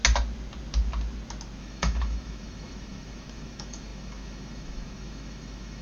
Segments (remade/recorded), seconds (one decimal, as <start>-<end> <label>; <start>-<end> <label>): 0.0-1.6 recorded; 1.6-5.8 remade